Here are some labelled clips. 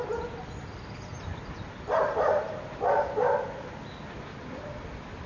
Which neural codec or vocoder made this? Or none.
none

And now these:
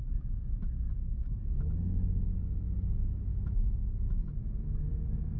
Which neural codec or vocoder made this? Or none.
none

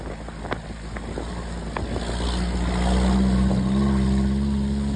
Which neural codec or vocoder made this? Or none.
none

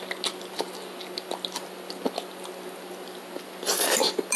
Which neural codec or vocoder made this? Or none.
none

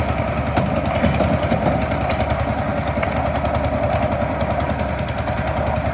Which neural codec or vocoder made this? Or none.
none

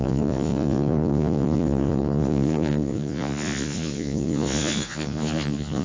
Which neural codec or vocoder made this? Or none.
vocoder, Vocos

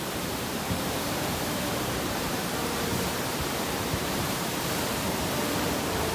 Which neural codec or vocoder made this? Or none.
vocoder, BigVGAN v2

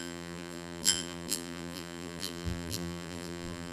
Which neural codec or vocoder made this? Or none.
vocoder, BigVGAN v2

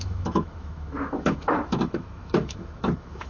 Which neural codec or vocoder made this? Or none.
autoencoder, DAC-VAE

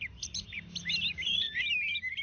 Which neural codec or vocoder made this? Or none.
vocoder, BigVGAN v2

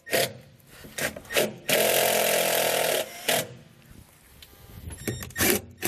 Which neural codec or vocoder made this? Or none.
none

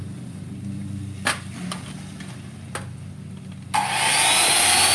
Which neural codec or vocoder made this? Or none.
none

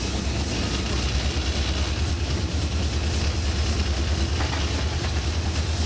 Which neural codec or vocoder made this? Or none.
none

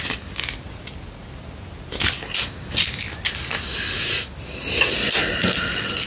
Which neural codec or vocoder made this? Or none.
none